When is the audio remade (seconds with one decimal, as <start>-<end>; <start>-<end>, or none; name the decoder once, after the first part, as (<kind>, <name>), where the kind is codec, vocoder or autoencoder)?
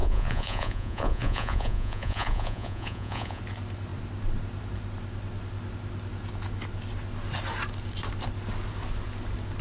0.0-3.4 (vocoder, Vocos)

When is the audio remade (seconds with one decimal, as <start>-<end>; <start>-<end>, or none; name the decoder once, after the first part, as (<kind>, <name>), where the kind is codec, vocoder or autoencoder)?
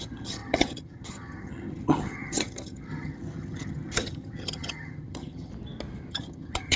0.0-5.5 (vocoder, HiFi-GAN); 6.1-6.8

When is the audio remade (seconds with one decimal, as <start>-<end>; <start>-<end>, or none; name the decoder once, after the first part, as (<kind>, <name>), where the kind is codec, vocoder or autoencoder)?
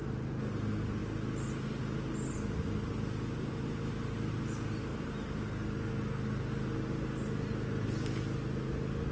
none